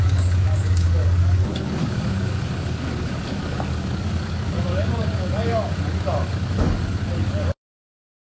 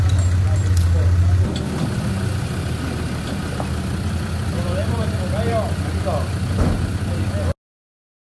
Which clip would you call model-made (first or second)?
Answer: first